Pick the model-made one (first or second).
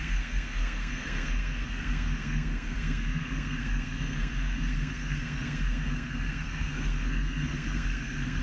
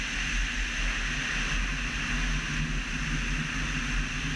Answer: first